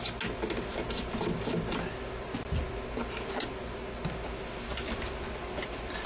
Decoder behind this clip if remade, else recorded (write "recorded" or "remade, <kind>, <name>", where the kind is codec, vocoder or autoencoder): recorded